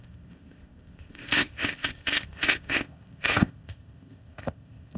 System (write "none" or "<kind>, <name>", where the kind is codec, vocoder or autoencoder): codec, ZipCodec